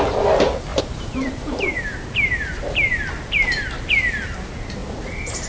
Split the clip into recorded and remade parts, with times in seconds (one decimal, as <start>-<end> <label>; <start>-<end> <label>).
0.0-0.7 recorded; 0.7-3.0 remade; 3.0-4.8 recorded; 4.8-5.5 remade